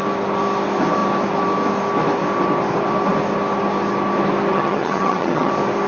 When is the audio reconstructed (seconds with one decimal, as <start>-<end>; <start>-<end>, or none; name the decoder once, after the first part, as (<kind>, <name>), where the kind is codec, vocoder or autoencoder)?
4.5-5.5 (vocoder, HiFi-GAN)